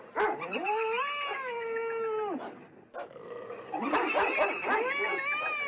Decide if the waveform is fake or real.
real